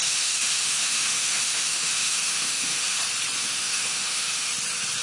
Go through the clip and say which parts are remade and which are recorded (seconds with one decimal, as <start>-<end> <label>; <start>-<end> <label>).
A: 0.0-3.0 remade; 3.0-3.4 recorded; 3.4-4.5 remade; 4.5-5.0 recorded